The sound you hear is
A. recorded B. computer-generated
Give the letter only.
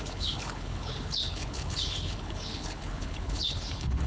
B